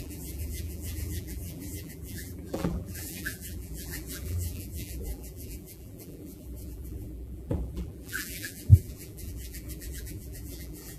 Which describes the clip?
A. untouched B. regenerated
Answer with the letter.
B